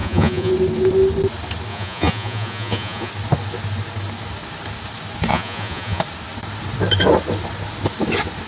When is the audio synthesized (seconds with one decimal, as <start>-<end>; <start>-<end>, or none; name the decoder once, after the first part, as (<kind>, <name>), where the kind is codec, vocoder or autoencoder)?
0.0-0.5 (vocoder, Vocos); 1.7-3.1; 5.3-6.0